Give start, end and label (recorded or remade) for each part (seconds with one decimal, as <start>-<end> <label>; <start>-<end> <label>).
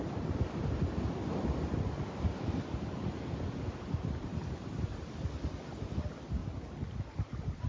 0.0-1.2 remade; 1.2-2.2 recorded; 2.2-6.4 remade; 6.4-7.0 recorded; 7.0-7.7 remade